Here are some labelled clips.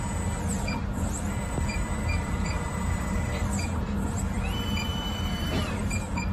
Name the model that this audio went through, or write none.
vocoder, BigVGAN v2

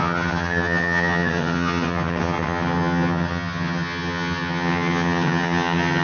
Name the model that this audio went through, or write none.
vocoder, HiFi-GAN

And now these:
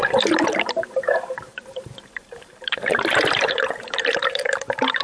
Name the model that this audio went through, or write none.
vocoder, BigVGAN v2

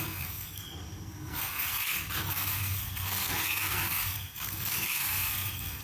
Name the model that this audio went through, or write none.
codec, SNAC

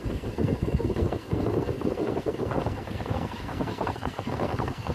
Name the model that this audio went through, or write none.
codec, SNAC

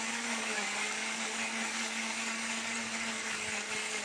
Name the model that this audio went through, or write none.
codec, DAC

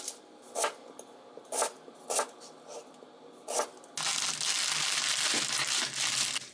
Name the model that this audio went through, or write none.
none